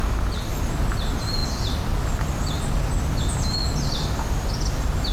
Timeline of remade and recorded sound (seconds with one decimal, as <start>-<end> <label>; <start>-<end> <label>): 0.0-5.1 recorded

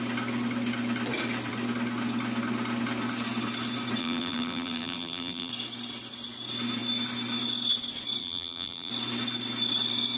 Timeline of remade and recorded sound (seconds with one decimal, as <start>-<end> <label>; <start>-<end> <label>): 0.0-4.0 recorded; 4.0-5.5 remade; 5.5-8.2 recorded; 8.2-8.9 remade; 8.9-10.2 recorded

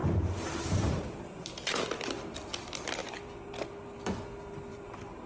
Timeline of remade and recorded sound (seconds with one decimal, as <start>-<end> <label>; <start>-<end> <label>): 0.0-1.6 remade; 1.6-3.0 recorded; 3.0-3.5 remade; 3.5-4.7 recorded; 4.7-5.3 remade

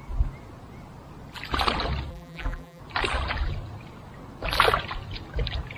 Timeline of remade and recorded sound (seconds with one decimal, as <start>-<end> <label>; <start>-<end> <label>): 0.0-2.1 recorded; 2.1-2.8 remade; 2.8-5.8 recorded

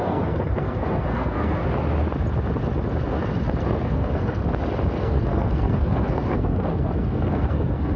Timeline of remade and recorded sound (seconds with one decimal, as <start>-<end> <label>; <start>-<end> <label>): 0.0-1.6 remade; 1.6-3.6 recorded; 3.6-4.4 remade; 4.4-5.0 recorded; 5.0-8.0 remade

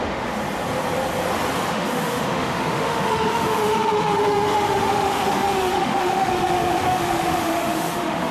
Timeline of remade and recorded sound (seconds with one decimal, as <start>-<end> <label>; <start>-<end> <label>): 0.0-0.4 remade; 0.4-1.7 recorded; 1.7-8.3 remade

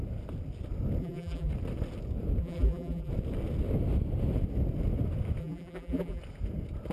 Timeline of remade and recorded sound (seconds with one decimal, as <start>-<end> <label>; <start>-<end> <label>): 0.0-1.0 recorded; 1.0-1.5 remade; 1.5-2.4 recorded; 2.4-3.1 remade; 3.1-5.4 recorded; 5.4-6.2 remade; 6.2-6.9 recorded